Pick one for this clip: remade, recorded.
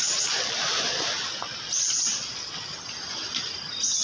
recorded